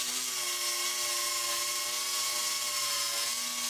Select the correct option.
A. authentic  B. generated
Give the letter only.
A